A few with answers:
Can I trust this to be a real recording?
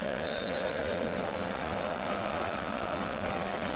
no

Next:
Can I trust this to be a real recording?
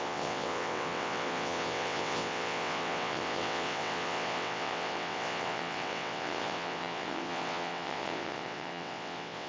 no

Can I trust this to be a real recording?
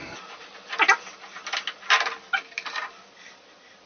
yes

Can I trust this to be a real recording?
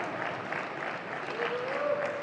yes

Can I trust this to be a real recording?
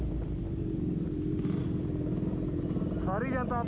yes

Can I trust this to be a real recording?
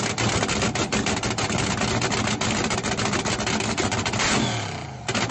yes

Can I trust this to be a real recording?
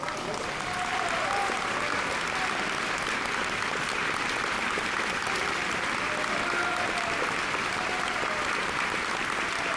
yes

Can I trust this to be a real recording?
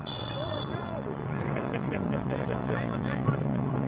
no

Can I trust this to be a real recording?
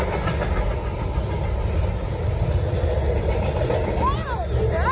yes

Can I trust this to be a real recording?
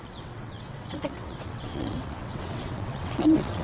no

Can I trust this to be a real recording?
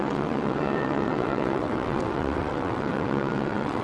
no